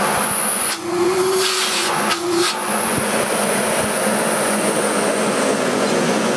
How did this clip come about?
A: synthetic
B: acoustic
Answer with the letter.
A